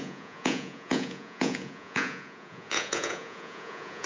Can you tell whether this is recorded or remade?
remade